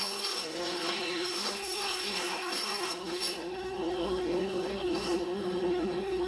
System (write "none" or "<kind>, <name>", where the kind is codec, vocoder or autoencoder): codec, SNAC